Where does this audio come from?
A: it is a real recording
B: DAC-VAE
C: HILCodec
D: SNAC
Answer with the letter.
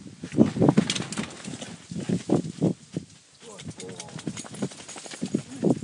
A